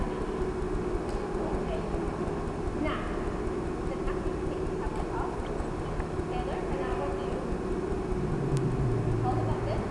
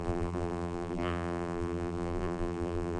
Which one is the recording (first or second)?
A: first